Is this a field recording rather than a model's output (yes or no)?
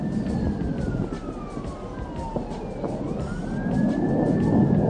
yes